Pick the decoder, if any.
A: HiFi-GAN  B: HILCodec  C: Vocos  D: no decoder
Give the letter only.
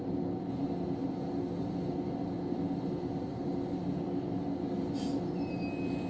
D